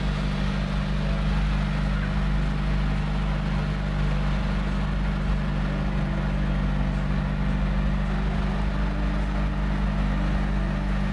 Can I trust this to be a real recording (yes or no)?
yes